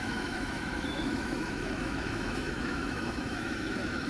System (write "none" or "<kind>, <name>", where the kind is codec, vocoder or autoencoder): autoencoder, DAC-VAE